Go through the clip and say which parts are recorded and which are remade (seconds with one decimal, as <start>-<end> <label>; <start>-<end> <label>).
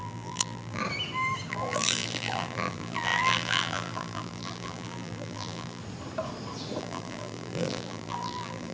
0.0-0.8 remade; 0.8-1.5 recorded; 1.5-5.8 remade; 5.8-6.8 recorded; 6.8-8.7 remade